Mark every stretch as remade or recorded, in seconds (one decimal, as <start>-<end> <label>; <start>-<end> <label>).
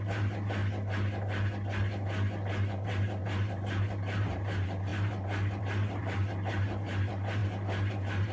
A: 0.0-0.6 remade; 0.6-2.6 recorded; 2.6-7.4 remade; 7.4-7.9 recorded; 7.9-8.3 remade